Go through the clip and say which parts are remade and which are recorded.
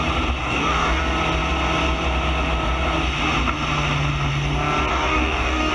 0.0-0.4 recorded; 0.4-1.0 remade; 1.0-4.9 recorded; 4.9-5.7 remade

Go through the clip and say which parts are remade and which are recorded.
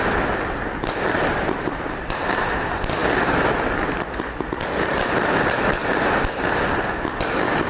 0.0-7.7 recorded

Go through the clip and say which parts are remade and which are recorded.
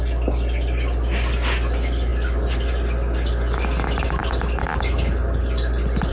0.0-6.1 recorded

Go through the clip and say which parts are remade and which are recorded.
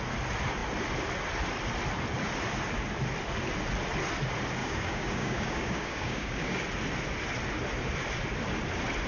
0.0-4.6 recorded; 4.6-6.6 remade; 6.6-9.1 recorded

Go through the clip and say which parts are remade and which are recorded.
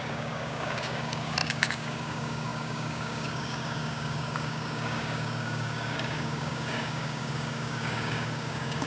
0.0-8.9 remade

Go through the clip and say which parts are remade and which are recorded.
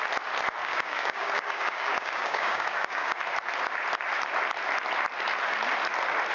0.0-0.6 recorded; 0.6-3.2 remade; 3.2-6.3 recorded